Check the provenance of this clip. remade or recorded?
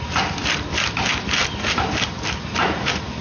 recorded